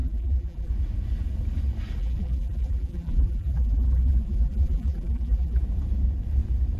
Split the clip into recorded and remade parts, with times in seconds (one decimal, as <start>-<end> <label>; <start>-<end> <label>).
0.0-0.7 remade; 0.7-2.0 recorded; 2.0-5.6 remade; 5.6-6.8 recorded

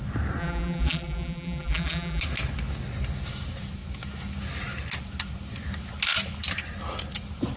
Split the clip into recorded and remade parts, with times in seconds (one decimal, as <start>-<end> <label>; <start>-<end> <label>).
0.0-0.4 recorded; 0.4-2.2 remade; 2.2-7.6 recorded

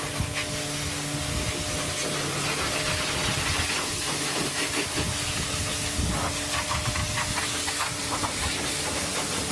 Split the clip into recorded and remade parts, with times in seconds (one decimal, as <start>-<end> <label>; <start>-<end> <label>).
0.0-8.0 recorded; 8.0-8.5 remade; 8.5-9.5 recorded

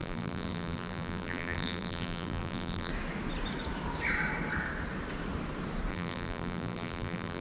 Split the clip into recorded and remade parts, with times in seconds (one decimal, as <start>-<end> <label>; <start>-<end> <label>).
0.0-2.9 remade; 2.9-5.9 recorded; 5.9-7.4 remade